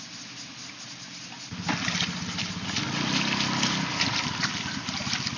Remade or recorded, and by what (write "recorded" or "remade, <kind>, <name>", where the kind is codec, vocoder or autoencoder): recorded